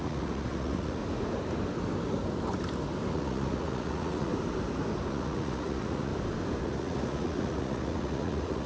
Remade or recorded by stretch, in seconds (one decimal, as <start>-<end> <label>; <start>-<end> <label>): 0.0-1.0 remade; 1.0-3.1 recorded; 3.1-4.3 remade; 4.3-5.1 recorded; 5.1-6.1 remade; 6.1-6.6 recorded; 6.6-8.7 remade